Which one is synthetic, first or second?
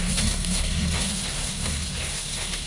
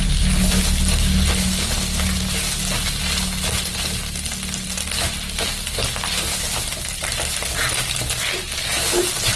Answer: first